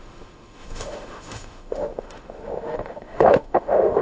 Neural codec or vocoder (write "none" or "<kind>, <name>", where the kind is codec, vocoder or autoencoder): autoencoder, DAC-VAE